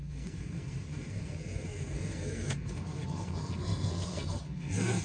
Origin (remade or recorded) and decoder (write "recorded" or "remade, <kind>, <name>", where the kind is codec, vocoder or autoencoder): remade, codec, SNAC